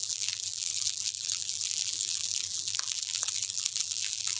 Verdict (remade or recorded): remade